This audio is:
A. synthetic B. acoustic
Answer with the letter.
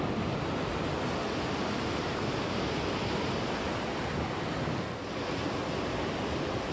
B